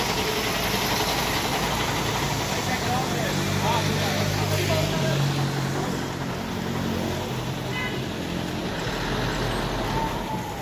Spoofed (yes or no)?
no